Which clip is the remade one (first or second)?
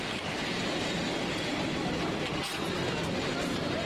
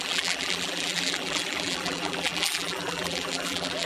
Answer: second